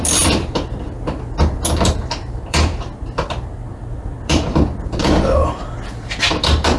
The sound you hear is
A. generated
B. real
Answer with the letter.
A